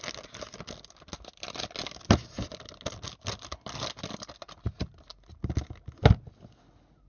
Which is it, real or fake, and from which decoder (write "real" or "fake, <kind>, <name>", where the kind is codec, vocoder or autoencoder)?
real